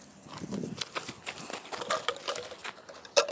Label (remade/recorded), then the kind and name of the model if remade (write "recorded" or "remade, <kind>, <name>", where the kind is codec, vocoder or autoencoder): recorded